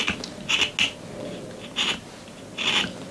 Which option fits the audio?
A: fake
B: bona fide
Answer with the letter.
B